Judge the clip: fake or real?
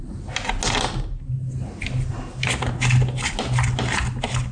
real